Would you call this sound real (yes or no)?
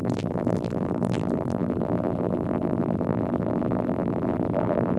no